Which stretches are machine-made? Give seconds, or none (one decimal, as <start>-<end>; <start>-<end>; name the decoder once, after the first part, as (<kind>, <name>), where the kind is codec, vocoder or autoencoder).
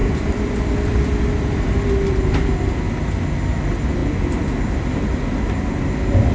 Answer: none